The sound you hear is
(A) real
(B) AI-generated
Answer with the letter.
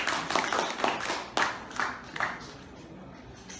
A